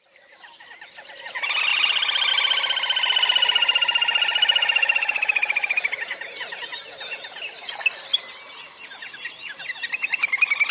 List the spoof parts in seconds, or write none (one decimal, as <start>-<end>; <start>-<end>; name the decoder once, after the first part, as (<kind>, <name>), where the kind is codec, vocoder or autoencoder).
none